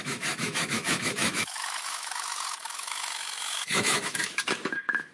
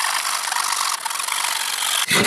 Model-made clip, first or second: first